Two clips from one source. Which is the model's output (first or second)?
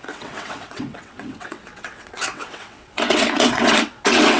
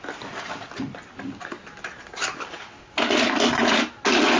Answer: first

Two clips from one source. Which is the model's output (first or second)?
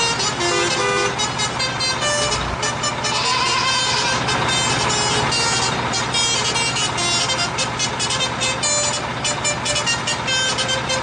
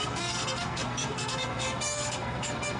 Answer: second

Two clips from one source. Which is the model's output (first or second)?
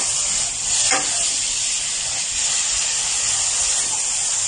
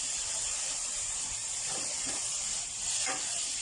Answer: second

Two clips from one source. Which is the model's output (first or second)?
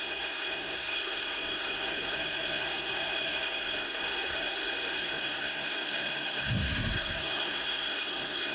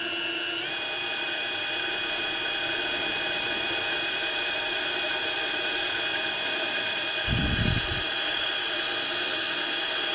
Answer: first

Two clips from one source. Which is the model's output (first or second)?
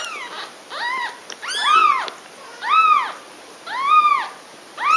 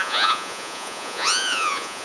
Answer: second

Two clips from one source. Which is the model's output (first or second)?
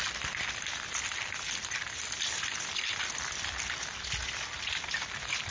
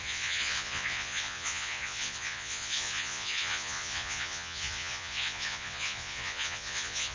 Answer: second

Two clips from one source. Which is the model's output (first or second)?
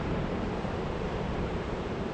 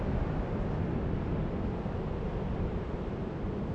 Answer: first